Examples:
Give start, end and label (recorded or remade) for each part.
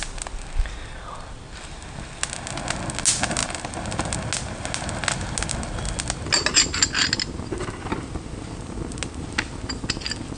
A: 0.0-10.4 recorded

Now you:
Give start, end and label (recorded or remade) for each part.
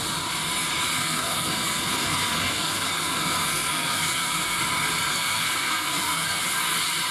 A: 0.0-1.0 recorded; 1.0-4.6 remade; 4.6-5.1 recorded; 5.1-6.4 remade; 6.4-7.1 recorded